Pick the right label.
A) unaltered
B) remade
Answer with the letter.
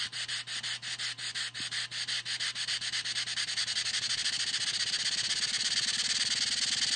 A